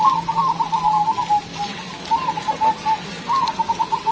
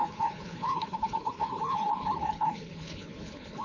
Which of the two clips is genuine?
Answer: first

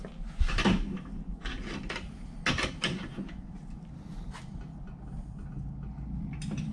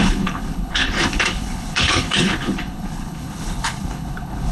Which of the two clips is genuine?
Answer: first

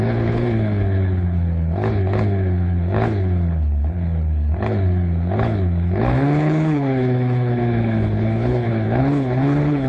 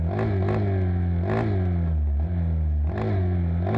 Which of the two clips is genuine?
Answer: second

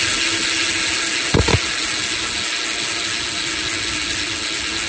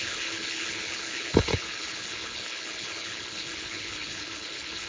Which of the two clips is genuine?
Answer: first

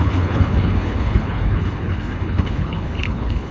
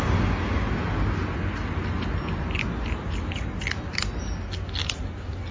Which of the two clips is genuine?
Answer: second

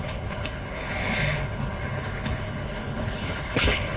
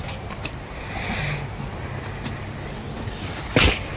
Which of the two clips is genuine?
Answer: second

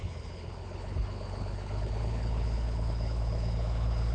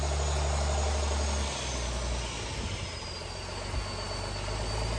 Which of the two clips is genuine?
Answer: second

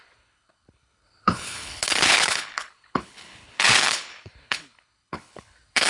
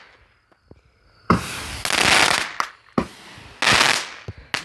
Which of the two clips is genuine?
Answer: second